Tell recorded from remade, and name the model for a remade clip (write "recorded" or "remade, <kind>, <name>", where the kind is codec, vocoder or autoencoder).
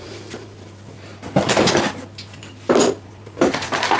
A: recorded